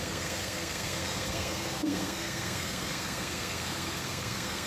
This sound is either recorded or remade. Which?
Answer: remade